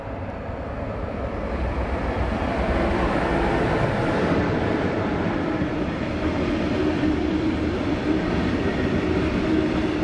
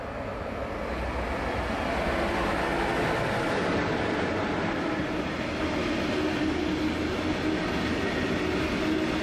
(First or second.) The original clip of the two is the second